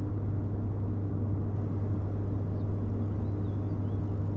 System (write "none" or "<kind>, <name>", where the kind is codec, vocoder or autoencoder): none